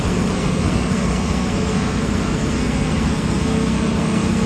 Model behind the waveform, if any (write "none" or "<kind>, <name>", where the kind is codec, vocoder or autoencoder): codec, SNAC